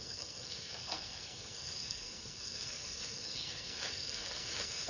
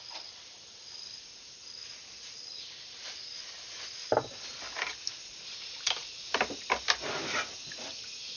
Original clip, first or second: second